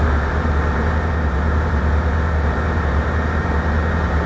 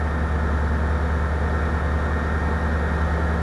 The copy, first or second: first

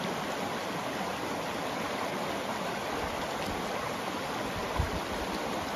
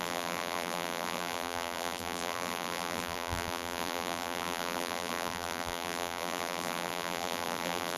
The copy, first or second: second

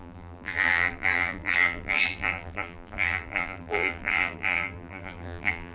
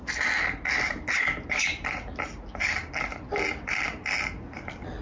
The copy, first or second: first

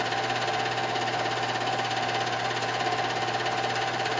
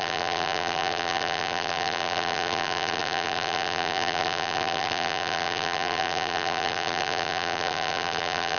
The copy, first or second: second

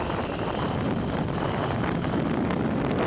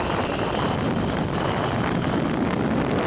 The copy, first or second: first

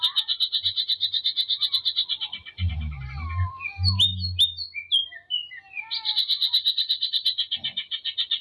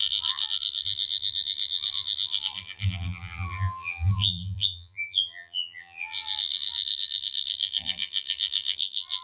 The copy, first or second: second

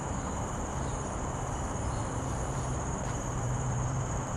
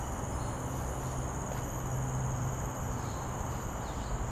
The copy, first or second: first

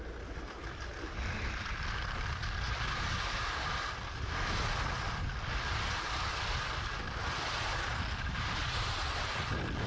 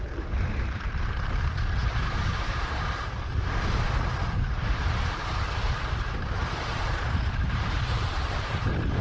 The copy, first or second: second